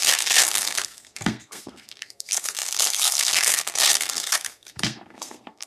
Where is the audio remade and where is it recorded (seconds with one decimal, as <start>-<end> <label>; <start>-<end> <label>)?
0.0-5.7 remade